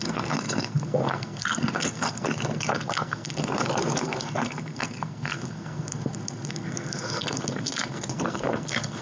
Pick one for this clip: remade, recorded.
remade